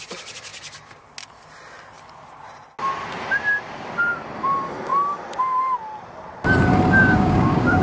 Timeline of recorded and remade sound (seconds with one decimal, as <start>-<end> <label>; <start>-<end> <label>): 0.0-7.0 recorded; 7.0-7.8 remade